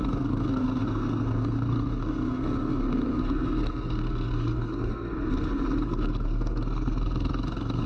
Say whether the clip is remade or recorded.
remade